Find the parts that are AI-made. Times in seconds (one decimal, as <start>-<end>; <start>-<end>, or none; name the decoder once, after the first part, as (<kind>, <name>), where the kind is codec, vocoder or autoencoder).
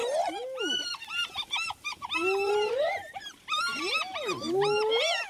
0.0-0.6 (vocoder, BigVGAN v2); 1.9-5.3